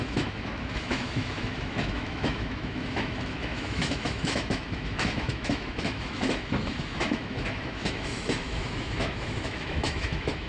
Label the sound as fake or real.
fake